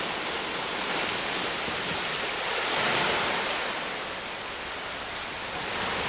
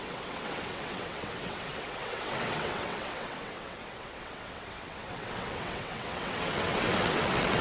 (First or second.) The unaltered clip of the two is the first